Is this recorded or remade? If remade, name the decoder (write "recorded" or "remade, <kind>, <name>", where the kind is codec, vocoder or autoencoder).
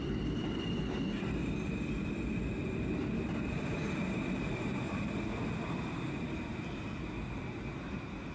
remade, vocoder, BigVGAN v2